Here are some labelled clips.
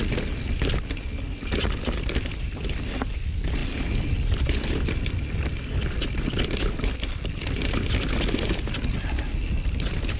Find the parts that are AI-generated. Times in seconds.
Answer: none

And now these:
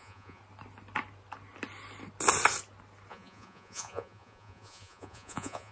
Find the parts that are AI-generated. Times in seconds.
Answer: 0.0-0.4 (vocoder, Vocos); 3.1-5.7

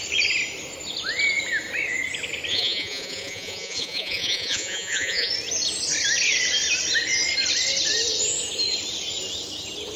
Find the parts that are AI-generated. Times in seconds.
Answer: 2.5-5.3 (vocoder, Vocos)

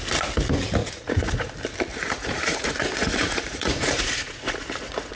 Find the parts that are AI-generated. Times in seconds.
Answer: 0.8-1.5 (vocoder, Vocos); 1.9-5.1